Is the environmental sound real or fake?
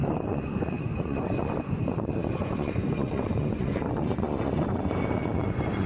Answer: fake